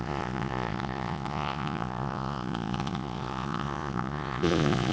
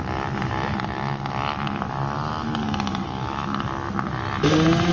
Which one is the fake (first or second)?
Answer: first